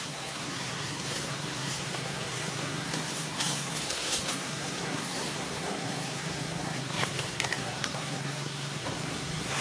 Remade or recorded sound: remade